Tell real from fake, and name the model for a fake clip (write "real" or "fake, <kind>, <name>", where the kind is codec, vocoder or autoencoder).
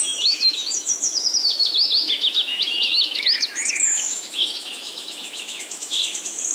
fake, autoencoder, DAC-VAE